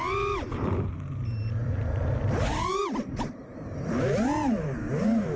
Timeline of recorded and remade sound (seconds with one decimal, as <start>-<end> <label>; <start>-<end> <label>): 0.0-1.6 recorded; 1.6-3.5 remade; 3.5-5.4 recorded